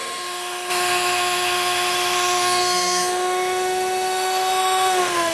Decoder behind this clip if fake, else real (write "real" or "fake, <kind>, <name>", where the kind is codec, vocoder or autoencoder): fake, autoencoder, DAC-VAE